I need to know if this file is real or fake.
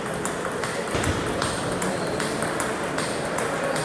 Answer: real